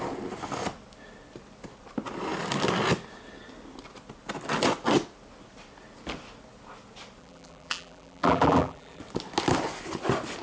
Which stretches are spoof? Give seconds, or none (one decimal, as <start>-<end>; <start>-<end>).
7.2-9.0